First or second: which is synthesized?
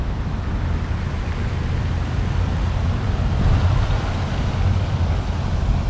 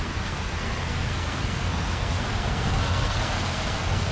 second